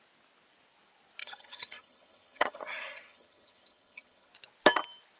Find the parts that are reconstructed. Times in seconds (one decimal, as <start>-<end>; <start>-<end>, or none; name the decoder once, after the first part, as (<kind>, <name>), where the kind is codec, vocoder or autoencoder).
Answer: 1.2-4.3 (vocoder, HiFi-GAN)